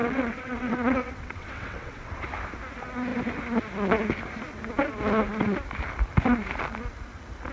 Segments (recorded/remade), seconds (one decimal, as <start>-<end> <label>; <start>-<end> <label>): 0.0-2.2 remade; 2.2-7.5 recorded